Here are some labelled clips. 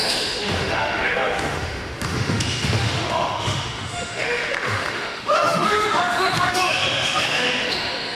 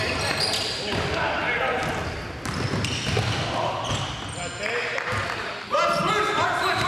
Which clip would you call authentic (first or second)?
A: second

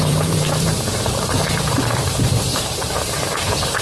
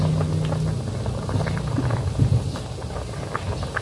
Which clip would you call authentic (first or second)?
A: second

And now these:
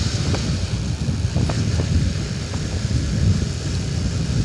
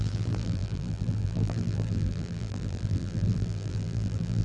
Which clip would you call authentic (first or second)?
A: first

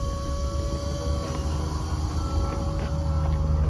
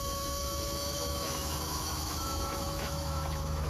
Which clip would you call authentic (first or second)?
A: first